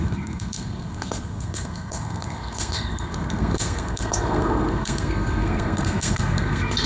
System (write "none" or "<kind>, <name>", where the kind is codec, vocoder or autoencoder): codec, SNAC